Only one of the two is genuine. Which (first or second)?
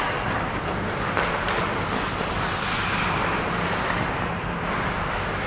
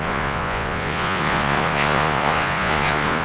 first